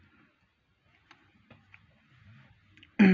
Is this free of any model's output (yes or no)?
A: yes